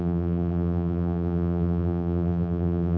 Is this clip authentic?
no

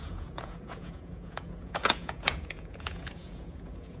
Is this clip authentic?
no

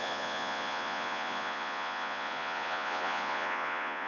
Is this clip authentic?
no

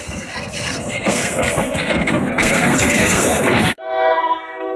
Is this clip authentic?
no